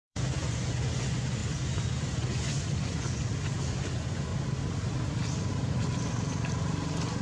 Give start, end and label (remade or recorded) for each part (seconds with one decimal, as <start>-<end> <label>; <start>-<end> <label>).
0.0-1.4 remade; 1.4-2.0 recorded; 2.0-3.2 remade; 3.2-3.9 recorded; 3.9-4.3 remade; 4.3-7.2 recorded